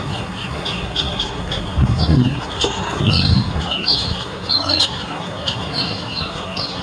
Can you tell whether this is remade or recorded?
remade